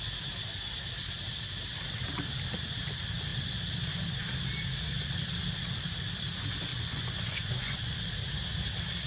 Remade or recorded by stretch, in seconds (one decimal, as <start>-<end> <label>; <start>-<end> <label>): 0.0-6.7 recorded; 6.7-8.1 remade; 8.1-9.1 recorded